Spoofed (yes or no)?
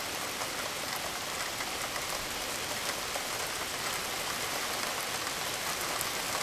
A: no